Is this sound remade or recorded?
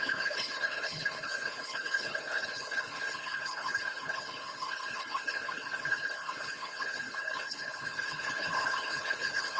remade